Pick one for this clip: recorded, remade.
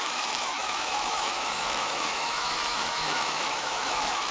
remade